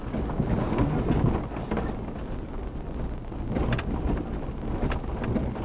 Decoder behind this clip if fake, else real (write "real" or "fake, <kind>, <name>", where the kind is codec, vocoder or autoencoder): real